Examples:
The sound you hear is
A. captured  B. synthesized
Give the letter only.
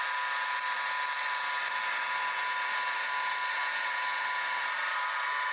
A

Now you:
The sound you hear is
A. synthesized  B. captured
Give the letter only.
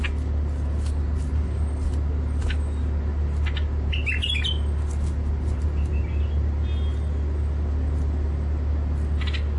B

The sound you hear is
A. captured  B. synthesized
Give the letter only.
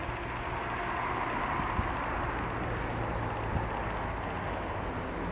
A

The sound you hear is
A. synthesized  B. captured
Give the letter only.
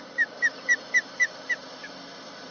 A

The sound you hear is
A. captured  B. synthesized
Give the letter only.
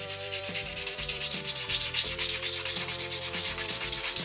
B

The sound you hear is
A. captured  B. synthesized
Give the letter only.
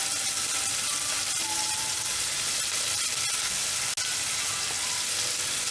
A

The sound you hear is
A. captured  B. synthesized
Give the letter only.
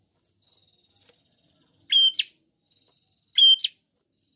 A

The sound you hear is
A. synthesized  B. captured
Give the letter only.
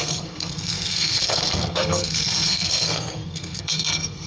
A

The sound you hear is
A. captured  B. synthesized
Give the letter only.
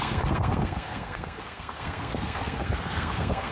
B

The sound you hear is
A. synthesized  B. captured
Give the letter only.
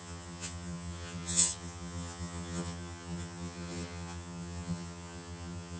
A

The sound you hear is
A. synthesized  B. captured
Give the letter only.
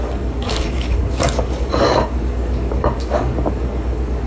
A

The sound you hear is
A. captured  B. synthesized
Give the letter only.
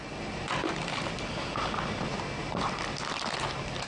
A